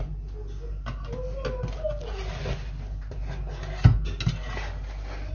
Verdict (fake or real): real